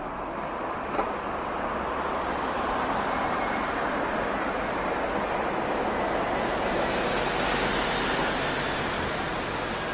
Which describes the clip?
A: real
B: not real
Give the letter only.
A